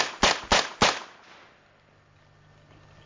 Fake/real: real